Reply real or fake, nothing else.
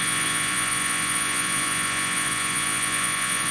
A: fake